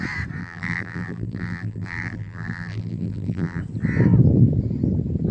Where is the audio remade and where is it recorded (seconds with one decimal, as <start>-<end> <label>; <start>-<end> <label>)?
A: 0.0-0.4 recorded; 0.4-3.6 remade; 3.6-5.3 recorded